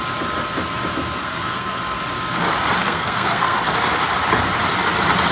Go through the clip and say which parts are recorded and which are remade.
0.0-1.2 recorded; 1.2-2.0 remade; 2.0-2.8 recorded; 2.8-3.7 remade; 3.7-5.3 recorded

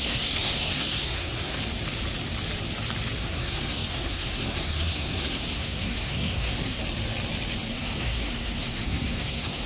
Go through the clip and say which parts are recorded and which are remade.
0.0-1.6 remade; 1.6-3.2 recorded; 3.2-6.8 remade; 6.8-7.7 recorded; 7.7-9.7 remade

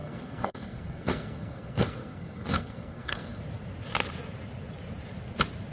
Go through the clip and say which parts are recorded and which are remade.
0.0-3.4 remade; 3.4-5.7 recorded